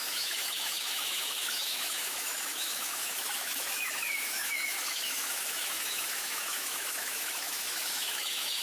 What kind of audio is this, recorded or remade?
remade